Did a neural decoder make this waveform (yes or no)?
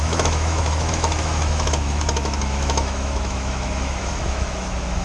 yes